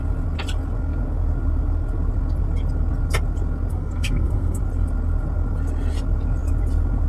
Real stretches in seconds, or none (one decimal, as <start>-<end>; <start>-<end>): 0.0-3.7; 4.6-7.1